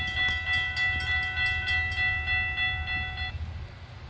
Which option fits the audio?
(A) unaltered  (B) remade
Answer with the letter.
A